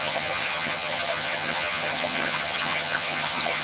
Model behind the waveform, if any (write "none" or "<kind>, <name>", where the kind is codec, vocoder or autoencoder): vocoder, HiFi-GAN